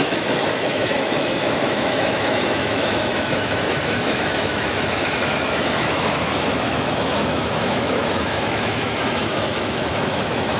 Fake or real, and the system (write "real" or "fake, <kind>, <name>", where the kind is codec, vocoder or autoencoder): fake, autoencoder, DAC-VAE